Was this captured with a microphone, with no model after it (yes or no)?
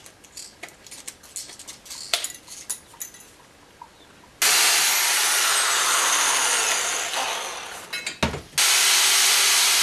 yes